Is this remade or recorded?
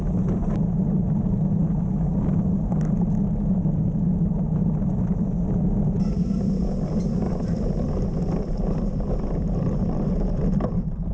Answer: recorded